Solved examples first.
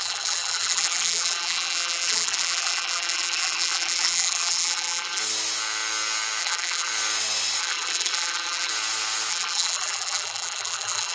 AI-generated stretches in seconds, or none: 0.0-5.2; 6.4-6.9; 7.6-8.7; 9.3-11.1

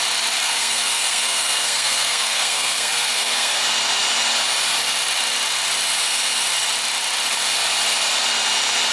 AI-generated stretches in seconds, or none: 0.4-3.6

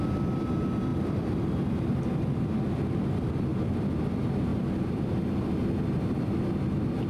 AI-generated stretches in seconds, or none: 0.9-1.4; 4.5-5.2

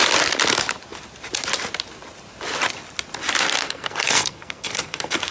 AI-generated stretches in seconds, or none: 3.6-5.3

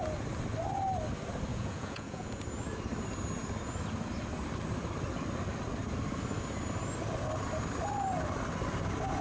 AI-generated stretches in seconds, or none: 1.5-2.4

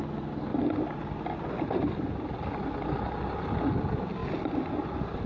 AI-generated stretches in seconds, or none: 0.5-3.7

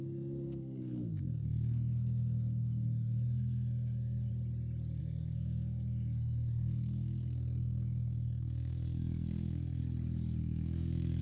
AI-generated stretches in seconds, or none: 0.0-4.3; 5.0-9.8; 10.4-11.2

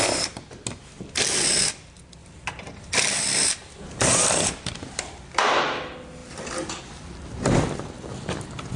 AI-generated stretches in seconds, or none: 2.2-3.2; 6.2-6.8